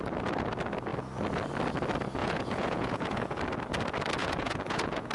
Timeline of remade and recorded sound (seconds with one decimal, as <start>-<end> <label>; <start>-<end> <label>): 0.0-2.2 recorded; 2.2-3.4 remade; 3.4-4.2 recorded; 4.2-5.1 remade